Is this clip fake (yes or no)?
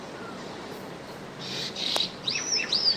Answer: yes